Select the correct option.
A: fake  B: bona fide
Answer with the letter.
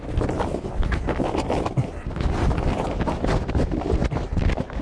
B